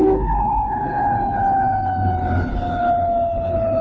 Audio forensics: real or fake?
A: fake